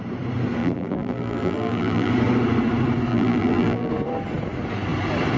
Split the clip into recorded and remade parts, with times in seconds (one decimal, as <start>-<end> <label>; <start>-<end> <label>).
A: 0.0-0.6 recorded; 0.6-2.1 remade; 2.1-3.1 recorded; 3.1-3.9 remade; 3.9-5.4 recorded